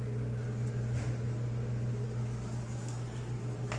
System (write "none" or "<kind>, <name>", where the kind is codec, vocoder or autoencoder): none